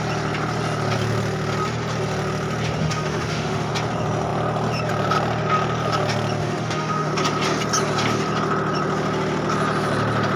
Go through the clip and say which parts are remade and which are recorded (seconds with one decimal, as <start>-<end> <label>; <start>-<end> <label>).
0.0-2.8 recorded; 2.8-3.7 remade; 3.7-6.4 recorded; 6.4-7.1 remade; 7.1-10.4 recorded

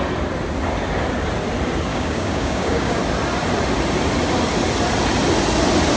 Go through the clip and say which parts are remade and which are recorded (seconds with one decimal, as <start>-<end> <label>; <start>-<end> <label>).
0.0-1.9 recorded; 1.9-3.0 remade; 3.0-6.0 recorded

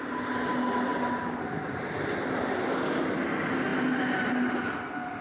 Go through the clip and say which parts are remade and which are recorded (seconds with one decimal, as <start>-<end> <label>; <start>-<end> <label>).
0.0-5.2 recorded

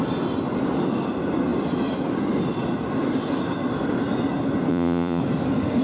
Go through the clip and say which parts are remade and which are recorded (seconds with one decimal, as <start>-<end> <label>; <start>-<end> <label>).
0.0-4.7 recorded; 4.7-5.2 remade; 5.2-5.8 recorded

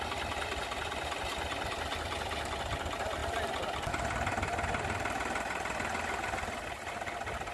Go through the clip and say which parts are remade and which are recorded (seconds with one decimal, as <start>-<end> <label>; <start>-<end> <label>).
0.0-7.5 recorded